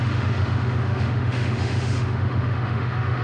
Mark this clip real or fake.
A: fake